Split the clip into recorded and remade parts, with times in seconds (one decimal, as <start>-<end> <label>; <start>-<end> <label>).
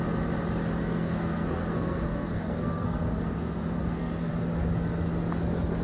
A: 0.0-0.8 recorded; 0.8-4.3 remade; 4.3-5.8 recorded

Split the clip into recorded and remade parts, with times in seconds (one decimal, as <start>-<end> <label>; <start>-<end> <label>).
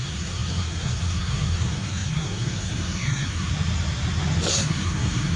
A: 0.0-3.5 remade; 3.5-4.5 recorded; 4.5-5.4 remade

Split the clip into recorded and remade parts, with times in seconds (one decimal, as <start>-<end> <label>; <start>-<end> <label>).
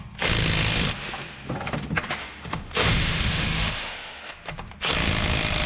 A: 0.0-2.2 recorded; 2.2-4.3 remade; 4.3-5.7 recorded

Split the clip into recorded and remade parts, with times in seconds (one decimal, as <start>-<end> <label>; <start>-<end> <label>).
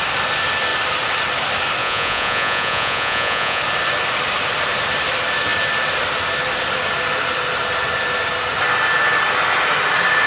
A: 0.0-1.8 recorded; 1.8-3.6 remade; 3.6-10.3 recorded